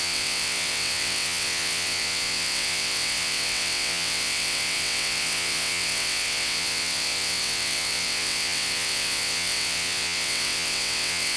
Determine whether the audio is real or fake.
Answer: fake